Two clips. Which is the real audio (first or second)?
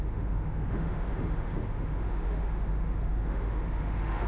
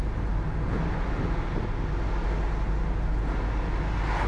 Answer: second